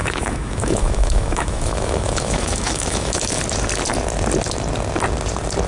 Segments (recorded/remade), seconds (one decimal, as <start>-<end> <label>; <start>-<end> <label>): 0.0-3.4 remade; 3.4-5.7 recorded